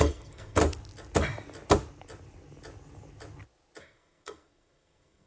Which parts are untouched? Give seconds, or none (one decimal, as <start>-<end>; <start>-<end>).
0.6-3.8